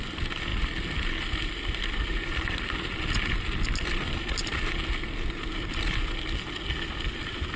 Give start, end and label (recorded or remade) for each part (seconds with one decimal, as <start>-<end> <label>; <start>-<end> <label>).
0.0-7.6 recorded